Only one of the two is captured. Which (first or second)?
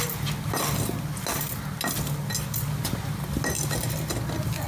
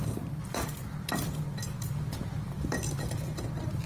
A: first